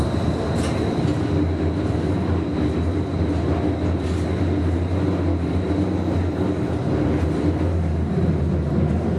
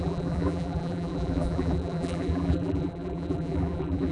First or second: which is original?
first